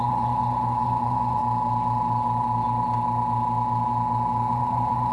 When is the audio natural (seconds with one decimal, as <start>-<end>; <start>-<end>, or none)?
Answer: 1.4-4.5